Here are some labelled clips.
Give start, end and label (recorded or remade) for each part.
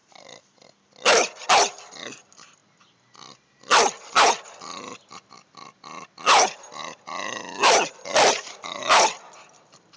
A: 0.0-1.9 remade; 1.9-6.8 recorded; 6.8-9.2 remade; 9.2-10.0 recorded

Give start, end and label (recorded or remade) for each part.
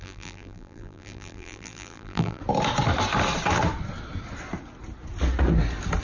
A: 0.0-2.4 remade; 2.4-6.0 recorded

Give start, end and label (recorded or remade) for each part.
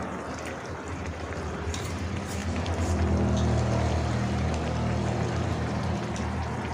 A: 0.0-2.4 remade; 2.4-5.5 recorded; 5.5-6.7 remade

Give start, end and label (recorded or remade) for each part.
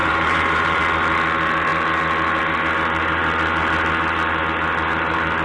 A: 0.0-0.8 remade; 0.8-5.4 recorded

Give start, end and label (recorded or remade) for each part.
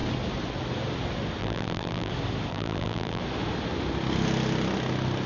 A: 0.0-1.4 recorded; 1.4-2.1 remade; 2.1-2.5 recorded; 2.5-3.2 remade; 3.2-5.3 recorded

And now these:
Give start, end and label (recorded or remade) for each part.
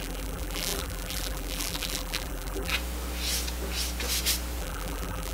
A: 0.0-2.7 remade; 2.7-4.6 recorded; 4.6-5.3 remade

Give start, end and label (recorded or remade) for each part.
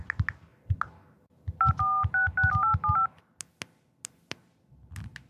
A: 0.0-5.3 recorded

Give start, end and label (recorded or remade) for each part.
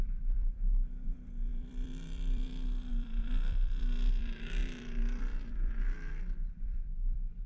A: 0.0-7.5 remade